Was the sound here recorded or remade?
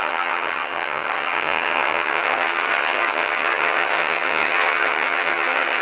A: remade